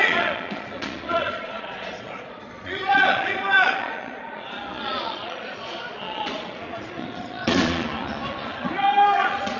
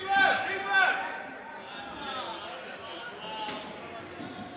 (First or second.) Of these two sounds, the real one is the second